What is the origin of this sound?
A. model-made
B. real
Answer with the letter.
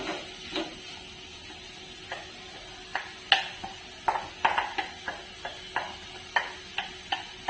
B